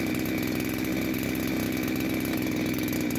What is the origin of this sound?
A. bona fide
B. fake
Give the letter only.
A